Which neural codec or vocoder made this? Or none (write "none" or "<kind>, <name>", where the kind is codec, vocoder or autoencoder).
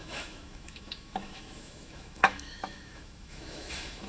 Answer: autoencoder, DAC-VAE